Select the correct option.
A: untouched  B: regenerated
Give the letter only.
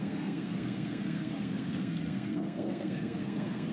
B